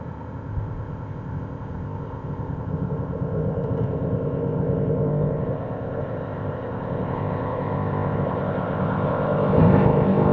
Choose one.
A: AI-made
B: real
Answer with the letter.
A